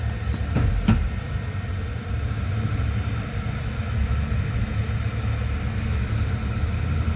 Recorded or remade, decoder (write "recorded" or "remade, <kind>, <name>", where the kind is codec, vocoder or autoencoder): recorded